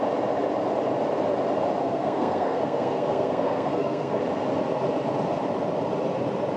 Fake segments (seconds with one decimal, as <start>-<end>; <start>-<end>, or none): 1.8-4.2